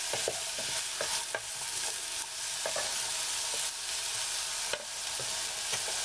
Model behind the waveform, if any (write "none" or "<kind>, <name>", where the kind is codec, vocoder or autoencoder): none